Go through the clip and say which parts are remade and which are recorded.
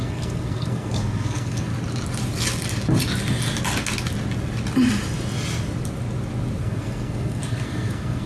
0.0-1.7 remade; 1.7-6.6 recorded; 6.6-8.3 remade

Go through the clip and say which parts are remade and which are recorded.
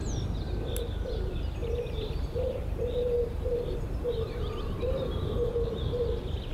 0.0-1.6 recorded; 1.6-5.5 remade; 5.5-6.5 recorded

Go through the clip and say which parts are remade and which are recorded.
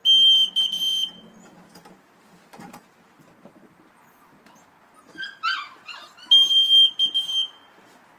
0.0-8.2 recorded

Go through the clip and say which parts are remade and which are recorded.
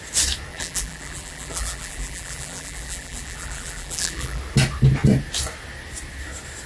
0.0-0.5 recorded; 0.5-4.4 remade; 4.4-6.7 recorded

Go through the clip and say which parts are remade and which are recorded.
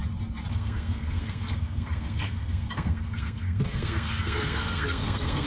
0.0-0.5 recorded; 0.5-5.5 remade